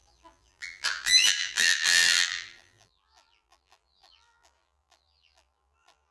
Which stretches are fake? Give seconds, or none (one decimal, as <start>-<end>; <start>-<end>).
0.0-6.1